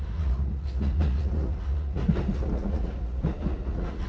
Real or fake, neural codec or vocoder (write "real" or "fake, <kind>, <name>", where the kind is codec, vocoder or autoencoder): fake, vocoder, Vocos